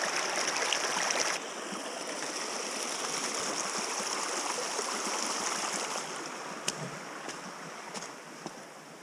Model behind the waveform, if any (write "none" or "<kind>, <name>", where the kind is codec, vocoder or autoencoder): none